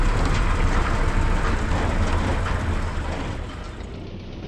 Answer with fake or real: fake